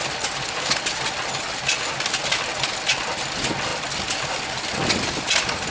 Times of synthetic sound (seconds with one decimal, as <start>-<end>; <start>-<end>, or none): none